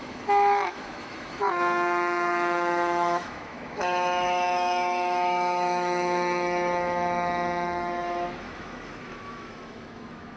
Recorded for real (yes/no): no